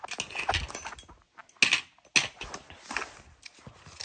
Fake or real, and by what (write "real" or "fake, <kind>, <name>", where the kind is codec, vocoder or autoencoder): real